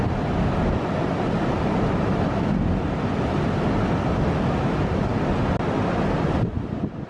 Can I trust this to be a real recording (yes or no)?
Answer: yes